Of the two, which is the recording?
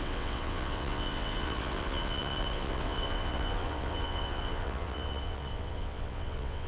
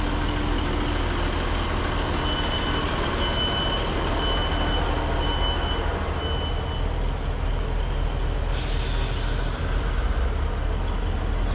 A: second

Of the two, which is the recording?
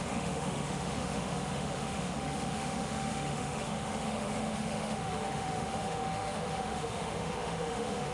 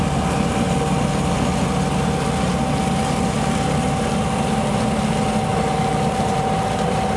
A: second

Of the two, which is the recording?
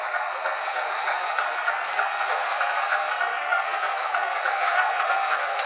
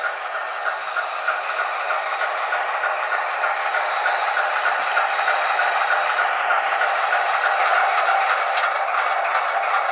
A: second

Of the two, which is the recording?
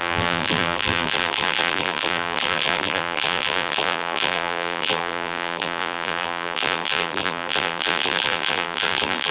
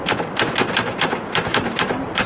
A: second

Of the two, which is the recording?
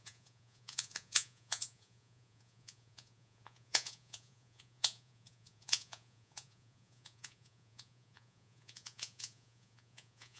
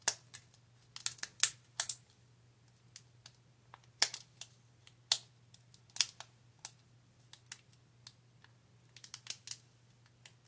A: second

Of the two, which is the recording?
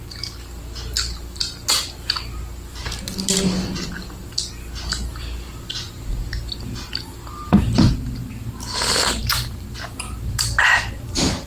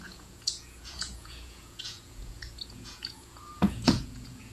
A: first